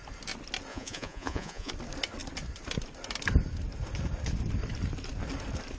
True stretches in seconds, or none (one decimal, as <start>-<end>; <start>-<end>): 0.0-0.7; 1.7-5.8